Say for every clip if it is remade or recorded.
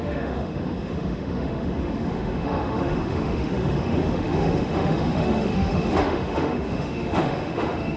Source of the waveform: remade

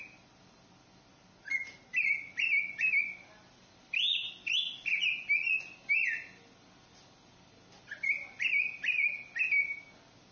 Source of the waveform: recorded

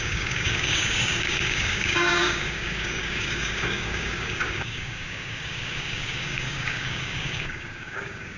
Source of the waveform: remade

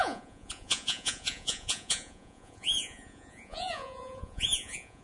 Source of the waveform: remade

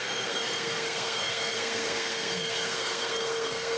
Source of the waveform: remade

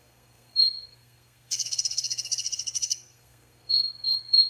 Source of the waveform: remade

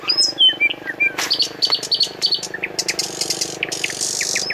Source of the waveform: recorded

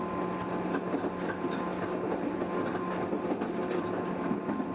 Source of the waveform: recorded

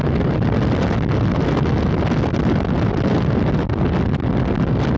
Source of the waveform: recorded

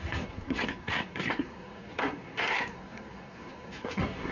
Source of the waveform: remade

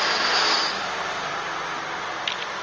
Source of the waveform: recorded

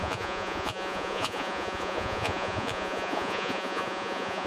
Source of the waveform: remade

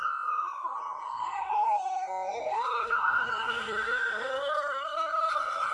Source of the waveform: remade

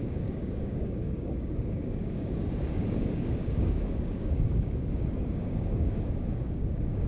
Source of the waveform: remade